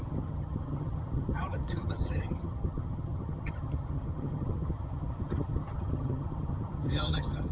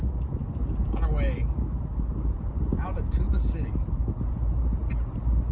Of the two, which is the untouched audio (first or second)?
second